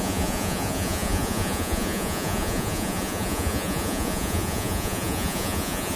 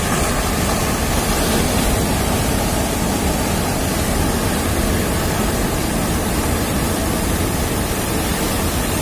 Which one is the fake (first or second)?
first